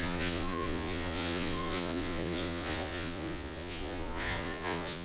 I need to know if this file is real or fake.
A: fake